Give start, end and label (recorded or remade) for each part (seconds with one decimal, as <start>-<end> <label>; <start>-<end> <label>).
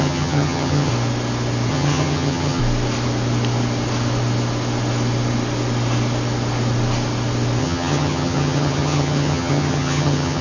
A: 0.0-0.9 remade; 0.9-1.7 recorded; 1.7-2.6 remade; 2.6-7.6 recorded; 7.6-10.4 remade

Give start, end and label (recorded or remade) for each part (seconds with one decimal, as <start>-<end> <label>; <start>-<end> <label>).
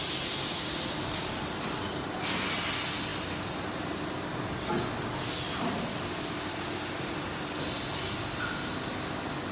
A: 0.0-9.5 recorded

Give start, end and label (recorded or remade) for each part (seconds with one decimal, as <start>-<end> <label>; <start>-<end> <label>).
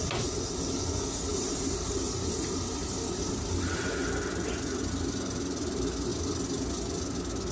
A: 0.0-1.3 recorded; 1.3-3.5 remade; 3.5-7.5 recorded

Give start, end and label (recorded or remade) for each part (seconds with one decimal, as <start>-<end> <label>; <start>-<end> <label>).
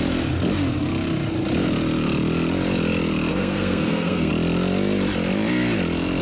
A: 0.0-3.3 recorded; 3.3-4.3 remade; 4.3-6.2 recorded